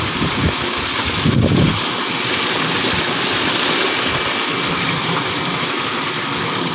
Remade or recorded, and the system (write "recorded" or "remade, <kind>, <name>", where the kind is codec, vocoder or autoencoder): recorded